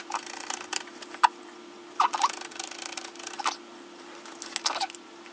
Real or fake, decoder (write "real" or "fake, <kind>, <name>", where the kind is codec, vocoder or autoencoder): real